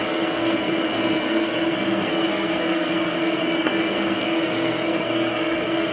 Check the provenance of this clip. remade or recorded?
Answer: remade